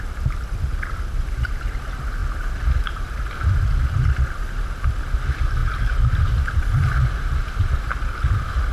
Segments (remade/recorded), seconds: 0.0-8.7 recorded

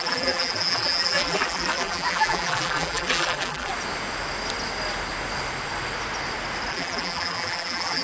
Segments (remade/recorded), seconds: 0.0-3.7 remade; 3.7-6.7 recorded; 6.7-8.0 remade

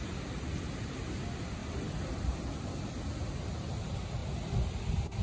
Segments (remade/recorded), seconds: 0.0-1.6 recorded; 1.6-2.8 remade; 2.8-4.2 recorded; 4.2-4.8 remade; 4.8-5.2 recorded

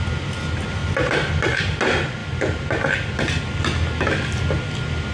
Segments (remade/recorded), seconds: 0.0-0.8 recorded; 0.8-1.6 remade; 1.6-5.1 recorded

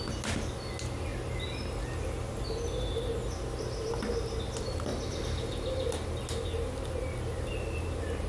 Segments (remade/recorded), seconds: 0.0-8.3 recorded

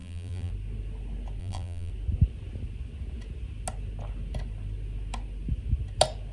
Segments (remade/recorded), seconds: 0.0-0.5 remade; 0.5-1.4 recorded; 1.4-1.9 remade; 1.9-6.3 recorded